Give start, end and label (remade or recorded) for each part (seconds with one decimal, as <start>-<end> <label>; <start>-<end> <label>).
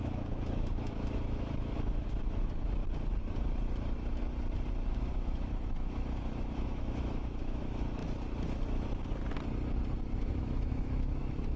0.0-2.8 remade; 2.8-4.9 recorded; 4.9-8.0 remade; 8.0-10.2 recorded; 10.2-11.6 remade